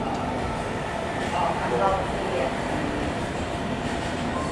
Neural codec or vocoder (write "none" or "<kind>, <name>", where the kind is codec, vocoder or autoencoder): vocoder, BigVGAN v2